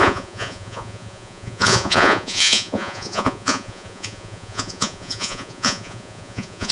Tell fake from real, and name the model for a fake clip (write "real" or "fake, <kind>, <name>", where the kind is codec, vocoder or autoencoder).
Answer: fake, vocoder, Vocos